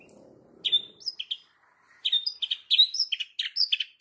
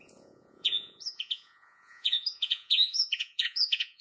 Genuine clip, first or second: first